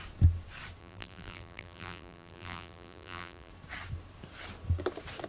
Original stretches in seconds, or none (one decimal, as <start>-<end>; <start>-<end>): 0.0-0.8; 3.5-5.3